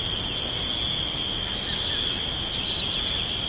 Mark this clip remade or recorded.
recorded